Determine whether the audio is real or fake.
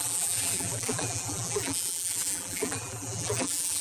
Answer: fake